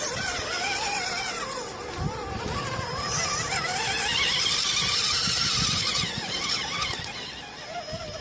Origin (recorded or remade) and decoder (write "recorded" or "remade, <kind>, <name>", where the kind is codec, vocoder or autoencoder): recorded